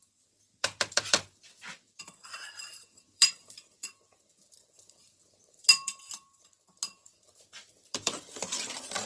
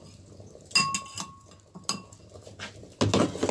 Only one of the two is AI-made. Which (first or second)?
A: first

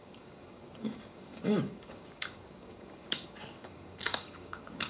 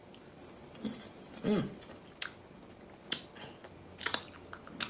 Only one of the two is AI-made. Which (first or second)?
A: first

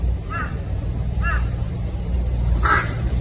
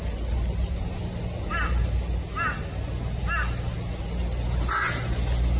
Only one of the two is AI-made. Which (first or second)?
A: first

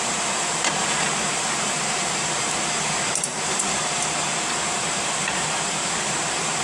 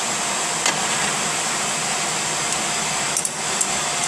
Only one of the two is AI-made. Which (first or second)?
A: first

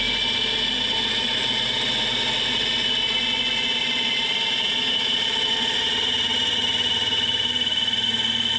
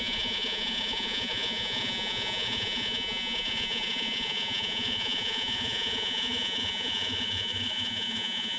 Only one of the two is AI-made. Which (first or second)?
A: second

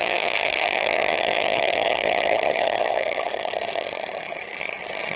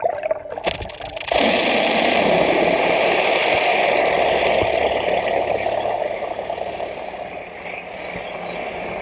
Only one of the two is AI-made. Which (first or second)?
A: first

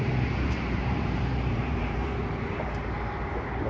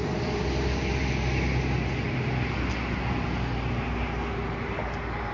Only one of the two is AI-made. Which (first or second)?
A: first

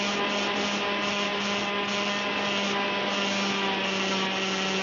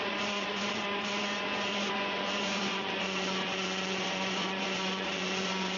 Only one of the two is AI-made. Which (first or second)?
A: second